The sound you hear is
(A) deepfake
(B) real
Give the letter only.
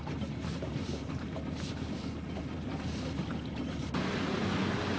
B